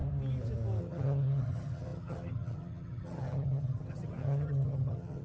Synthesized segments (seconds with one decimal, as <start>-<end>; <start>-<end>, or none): 0.8-5.2